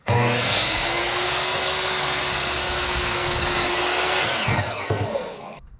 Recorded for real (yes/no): no